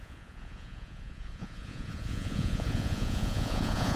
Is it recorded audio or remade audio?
remade